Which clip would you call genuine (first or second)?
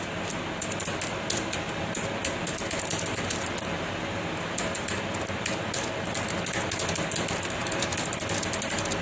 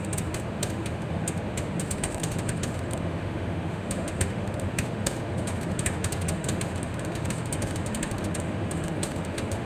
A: first